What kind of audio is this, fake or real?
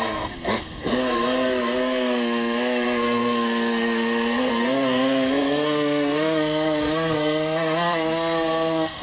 fake